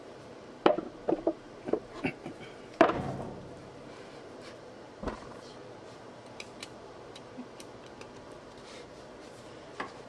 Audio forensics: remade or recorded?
remade